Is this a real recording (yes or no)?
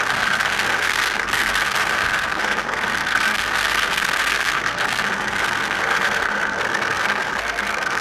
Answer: no